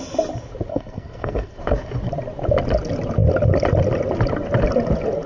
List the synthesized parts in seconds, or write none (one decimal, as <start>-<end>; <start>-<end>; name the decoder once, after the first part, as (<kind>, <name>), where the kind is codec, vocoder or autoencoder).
0.7-1.6 (codec, SNAC)